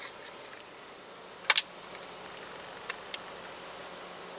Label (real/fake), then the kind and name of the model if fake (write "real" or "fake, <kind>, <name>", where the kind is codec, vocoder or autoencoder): real